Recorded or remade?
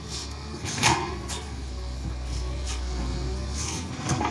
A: remade